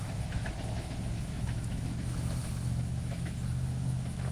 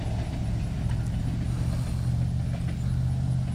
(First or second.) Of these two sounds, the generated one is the first